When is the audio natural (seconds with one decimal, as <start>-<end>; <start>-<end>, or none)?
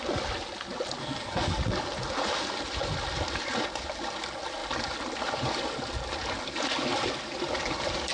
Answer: 0.0-1.0; 1.6-8.1